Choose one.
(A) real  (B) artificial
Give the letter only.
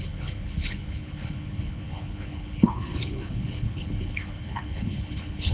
B